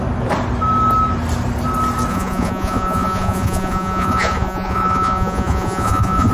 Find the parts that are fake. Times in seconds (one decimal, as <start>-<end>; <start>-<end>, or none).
2.1-6.3